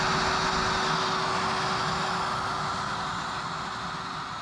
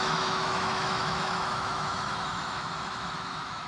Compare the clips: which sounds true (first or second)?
first